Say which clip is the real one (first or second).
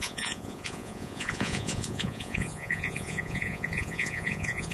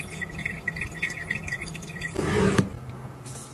second